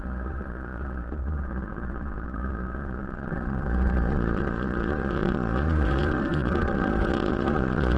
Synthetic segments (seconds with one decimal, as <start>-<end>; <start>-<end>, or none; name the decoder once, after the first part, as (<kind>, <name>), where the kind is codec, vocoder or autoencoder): 0.0-8.0 (vocoder, Vocos)